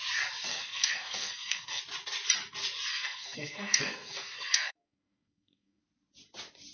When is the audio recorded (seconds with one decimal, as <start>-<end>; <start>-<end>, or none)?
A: 0.0-0.5; 1.8-2.9; 5.8-6.7